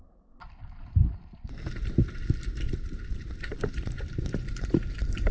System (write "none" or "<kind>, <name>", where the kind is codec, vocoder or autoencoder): vocoder, BigVGAN v2